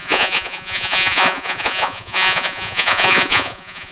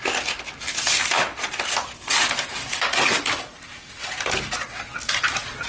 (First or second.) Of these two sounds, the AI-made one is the first